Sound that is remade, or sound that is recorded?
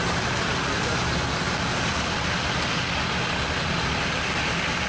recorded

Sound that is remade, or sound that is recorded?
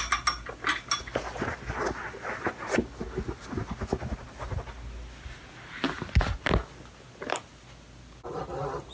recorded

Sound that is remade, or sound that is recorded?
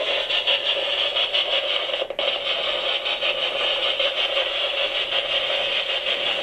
recorded